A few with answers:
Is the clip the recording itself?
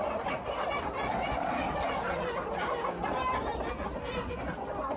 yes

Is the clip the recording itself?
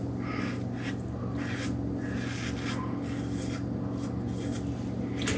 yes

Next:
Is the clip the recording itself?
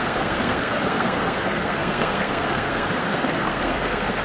no